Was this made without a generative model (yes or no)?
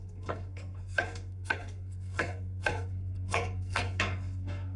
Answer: no